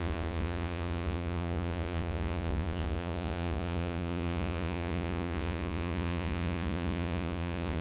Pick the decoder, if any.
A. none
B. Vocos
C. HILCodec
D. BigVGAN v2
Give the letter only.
B